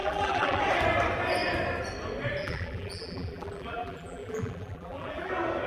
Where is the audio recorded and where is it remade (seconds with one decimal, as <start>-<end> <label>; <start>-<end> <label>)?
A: 0.0-0.6 remade; 0.6-2.4 recorded; 2.4-5.3 remade; 5.3-5.7 recorded